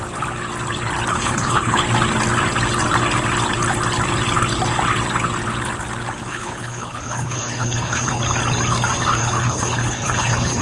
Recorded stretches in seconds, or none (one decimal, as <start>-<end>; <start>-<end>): 0.0-1.1; 1.8-6.3; 8.1-9.2